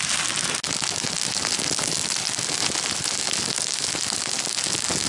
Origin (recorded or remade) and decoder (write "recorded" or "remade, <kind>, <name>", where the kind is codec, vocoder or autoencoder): recorded